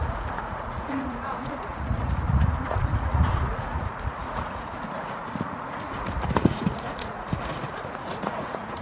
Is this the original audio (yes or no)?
no